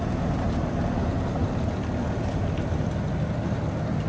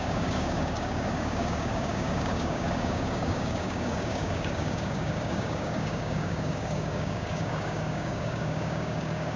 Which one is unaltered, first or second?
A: first